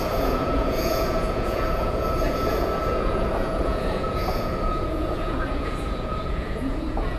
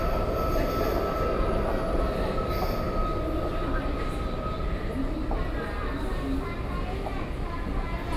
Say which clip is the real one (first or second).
second